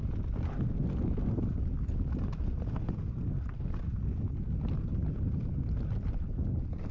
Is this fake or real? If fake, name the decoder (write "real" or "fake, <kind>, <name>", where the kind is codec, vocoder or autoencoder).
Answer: real